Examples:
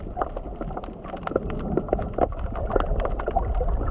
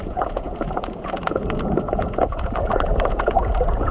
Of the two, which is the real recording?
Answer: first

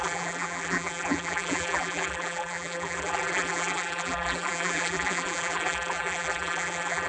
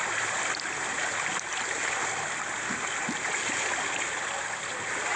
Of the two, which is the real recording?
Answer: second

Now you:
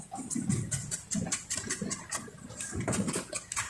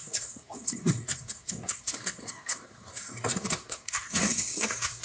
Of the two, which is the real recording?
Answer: first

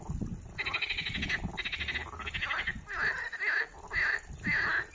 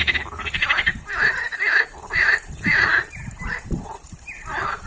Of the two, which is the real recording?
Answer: first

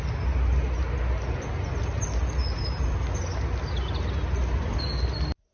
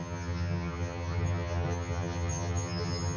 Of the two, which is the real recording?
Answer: first